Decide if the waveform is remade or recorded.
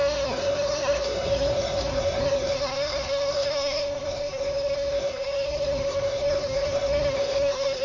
remade